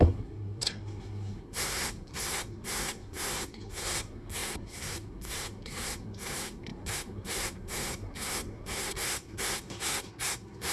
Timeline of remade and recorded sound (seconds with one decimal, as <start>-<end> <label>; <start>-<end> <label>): 0.0-10.7 remade